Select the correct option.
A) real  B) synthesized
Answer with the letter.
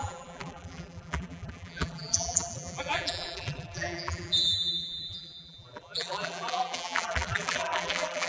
B